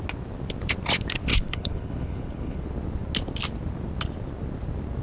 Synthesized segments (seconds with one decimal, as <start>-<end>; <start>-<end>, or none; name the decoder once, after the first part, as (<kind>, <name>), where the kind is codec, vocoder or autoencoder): 1.3-2.6 (codec, HILCodec)